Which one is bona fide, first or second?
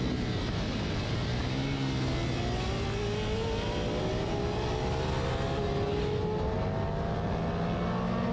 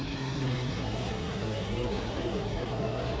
first